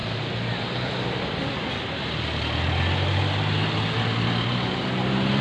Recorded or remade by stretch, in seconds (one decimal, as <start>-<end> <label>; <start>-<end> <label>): 0.0-5.4 recorded